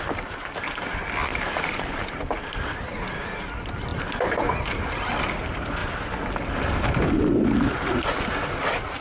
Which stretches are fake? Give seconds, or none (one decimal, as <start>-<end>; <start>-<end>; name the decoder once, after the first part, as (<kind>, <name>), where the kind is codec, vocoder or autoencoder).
1.3-3.0 (vocoder, BigVGAN v2); 3.9-4.8